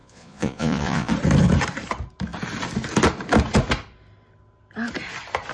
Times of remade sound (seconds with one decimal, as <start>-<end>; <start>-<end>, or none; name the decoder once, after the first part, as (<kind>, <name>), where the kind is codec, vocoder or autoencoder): 0.0-1.1 (vocoder, Vocos)